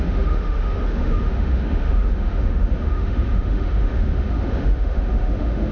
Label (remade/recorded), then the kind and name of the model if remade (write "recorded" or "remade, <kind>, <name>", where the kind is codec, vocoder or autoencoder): remade, autoencoder, DAC-VAE